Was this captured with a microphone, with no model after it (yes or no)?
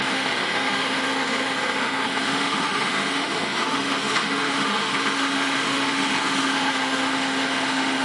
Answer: no